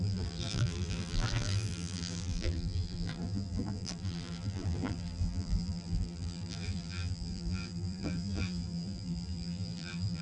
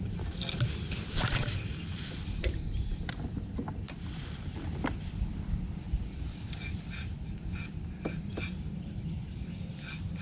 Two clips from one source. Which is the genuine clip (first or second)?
second